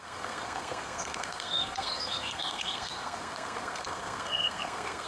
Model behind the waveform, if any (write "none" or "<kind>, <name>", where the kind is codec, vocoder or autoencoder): codec, SNAC